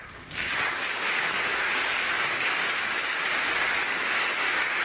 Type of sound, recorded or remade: remade